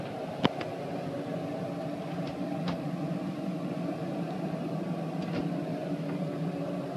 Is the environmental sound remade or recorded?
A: recorded